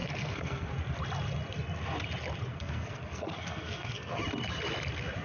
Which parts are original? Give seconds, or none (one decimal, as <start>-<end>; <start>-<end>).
0.7-2.5; 4.2-5.2